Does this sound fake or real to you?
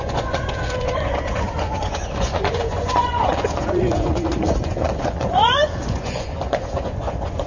fake